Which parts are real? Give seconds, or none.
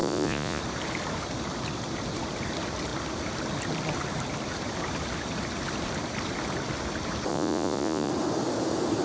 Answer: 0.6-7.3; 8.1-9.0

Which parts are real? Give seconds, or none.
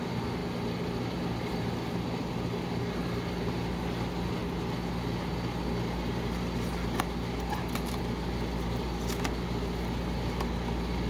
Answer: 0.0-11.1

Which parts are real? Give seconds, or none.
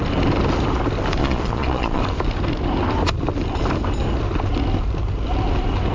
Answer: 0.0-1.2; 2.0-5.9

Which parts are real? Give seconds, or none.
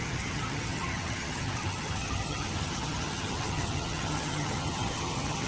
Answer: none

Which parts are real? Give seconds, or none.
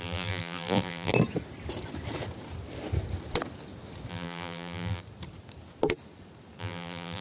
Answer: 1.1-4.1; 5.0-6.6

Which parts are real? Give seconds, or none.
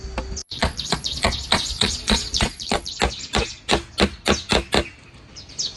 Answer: 0.0-0.4; 2.9-5.8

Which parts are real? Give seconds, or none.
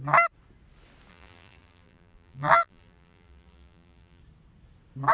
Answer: 0.0-1.1; 4.2-5.1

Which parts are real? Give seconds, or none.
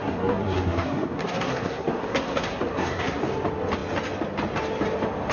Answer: 3.2-5.3